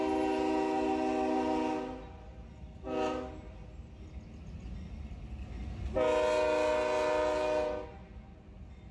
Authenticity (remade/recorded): recorded